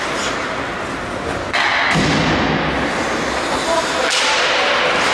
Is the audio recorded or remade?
recorded